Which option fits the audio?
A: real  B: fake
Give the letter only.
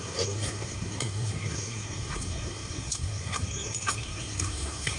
B